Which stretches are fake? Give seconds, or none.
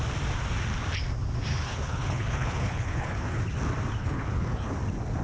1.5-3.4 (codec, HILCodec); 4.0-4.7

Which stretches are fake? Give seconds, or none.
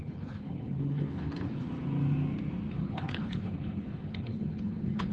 0.0-1.7 (codec, HILCodec); 2.7-5.1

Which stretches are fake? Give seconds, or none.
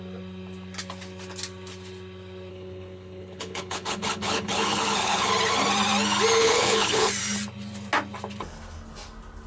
2.5-5.3 (codec, HILCodec); 6.4-7.1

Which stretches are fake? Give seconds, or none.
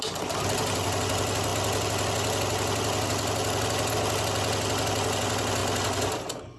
none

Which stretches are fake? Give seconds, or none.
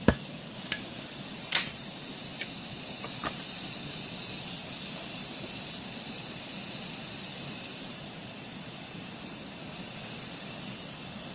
none